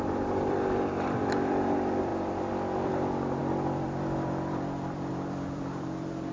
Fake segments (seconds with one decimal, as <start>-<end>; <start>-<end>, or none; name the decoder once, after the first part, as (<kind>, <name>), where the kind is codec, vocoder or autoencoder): 0.0-6.3 (vocoder, BigVGAN v2)